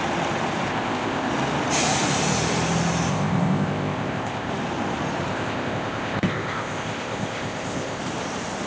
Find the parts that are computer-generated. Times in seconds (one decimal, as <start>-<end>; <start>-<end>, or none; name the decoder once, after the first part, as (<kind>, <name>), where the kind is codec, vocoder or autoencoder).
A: 0.7-1.3 (codec, ZipCodec); 3.1-4.5; 5.3-8.0

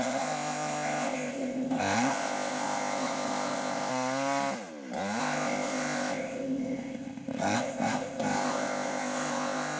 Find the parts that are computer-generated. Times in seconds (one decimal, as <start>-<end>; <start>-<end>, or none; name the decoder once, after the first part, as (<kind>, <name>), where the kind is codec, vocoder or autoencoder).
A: 0.0-3.9 (codec, ZipCodec); 5.2-9.8

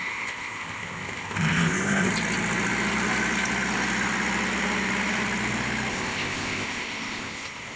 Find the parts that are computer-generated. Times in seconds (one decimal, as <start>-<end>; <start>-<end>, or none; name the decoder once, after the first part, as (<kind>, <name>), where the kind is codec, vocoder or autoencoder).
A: 0.0-2.1 (codec, ZipCodec); 5.9-7.8

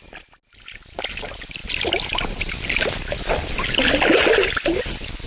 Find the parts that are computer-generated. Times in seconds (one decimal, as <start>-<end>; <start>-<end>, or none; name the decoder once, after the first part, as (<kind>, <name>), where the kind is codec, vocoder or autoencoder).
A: none

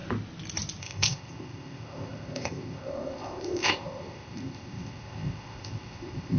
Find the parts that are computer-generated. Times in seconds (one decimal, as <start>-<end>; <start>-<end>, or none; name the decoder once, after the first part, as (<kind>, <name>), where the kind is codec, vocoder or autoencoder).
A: 0.8-6.4 (codec, ZipCodec)

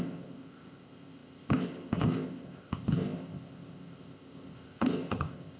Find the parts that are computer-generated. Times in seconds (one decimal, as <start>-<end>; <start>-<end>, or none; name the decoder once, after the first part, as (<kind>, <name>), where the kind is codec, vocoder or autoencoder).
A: 0.0-5.6 (codec, ZipCodec)

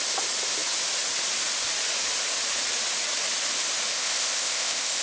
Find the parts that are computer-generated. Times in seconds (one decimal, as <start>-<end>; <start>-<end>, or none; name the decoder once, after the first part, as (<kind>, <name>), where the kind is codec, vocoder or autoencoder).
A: 3.9-5.0 (codec, ZipCodec)

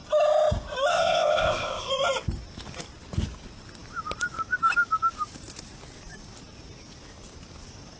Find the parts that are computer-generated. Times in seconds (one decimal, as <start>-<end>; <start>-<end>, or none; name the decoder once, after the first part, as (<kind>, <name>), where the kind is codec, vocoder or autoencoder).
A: 0.9-1.9 (codec, ZipCodec)